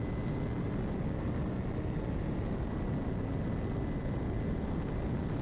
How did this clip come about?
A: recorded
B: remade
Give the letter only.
A